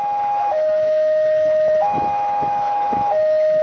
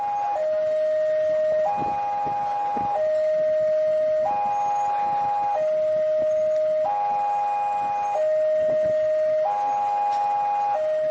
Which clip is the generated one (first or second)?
first